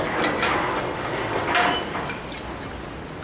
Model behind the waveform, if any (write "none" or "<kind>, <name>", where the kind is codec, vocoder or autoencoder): none